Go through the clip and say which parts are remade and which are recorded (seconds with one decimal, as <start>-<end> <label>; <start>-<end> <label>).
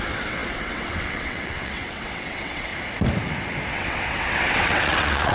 0.0-2.7 remade; 2.7-3.7 recorded; 3.7-5.3 remade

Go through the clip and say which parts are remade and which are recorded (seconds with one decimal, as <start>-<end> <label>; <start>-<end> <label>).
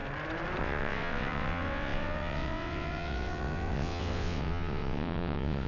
0.0-0.6 recorded; 0.6-5.7 remade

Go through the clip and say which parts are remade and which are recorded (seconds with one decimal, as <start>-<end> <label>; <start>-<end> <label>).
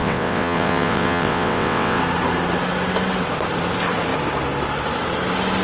0.0-2.0 remade; 2.0-5.6 recorded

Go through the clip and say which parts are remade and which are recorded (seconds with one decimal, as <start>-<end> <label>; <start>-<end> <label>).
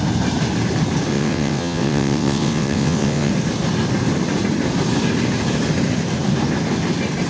0.0-1.1 recorded; 1.1-3.3 remade; 3.3-7.3 recorded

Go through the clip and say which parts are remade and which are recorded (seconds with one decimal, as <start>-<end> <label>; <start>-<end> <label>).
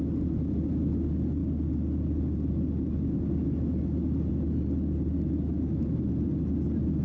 0.0-7.0 recorded